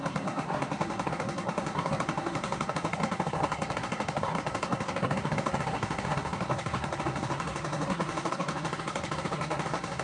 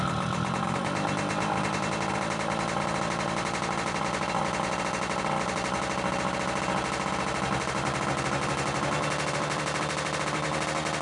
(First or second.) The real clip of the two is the second